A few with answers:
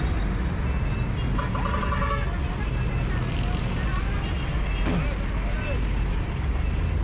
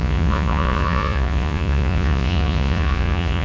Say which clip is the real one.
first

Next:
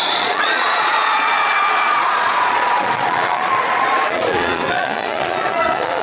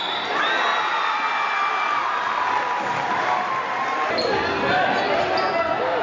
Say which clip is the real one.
second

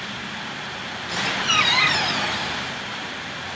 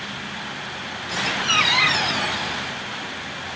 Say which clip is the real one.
second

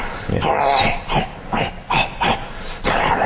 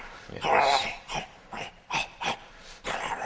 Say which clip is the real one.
first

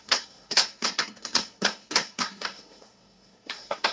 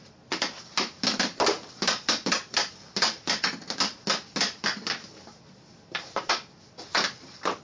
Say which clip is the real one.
second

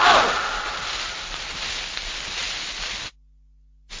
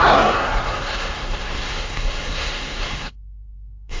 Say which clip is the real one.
first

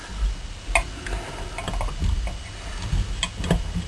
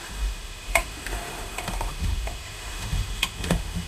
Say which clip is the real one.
first